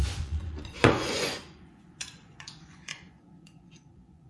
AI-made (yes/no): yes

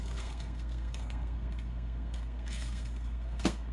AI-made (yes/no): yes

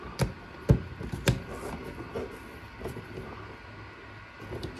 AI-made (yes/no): no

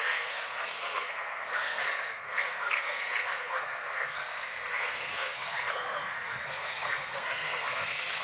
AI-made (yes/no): yes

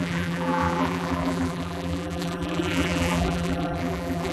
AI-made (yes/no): yes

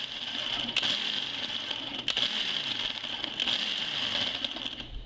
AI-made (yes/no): no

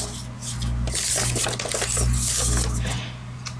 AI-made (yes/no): no